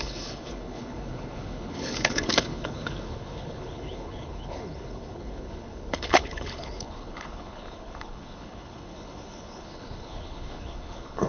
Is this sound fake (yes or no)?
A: yes